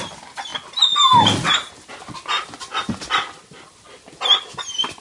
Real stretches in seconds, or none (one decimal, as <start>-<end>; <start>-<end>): 0.0-5.0